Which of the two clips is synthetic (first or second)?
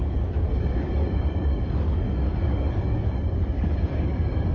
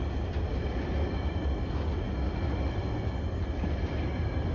first